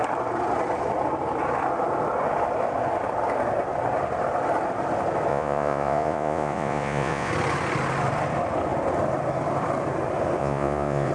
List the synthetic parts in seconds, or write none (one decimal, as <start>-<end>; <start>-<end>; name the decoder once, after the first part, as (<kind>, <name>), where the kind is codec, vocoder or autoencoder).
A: 5.3-7.3 (vocoder, Vocos); 10.4-11.1